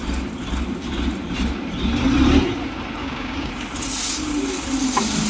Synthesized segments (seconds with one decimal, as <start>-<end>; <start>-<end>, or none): 3.0-3.5